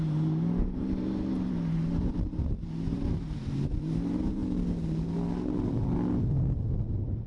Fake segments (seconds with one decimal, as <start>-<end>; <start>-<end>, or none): 0.0-4.4; 6.7-7.3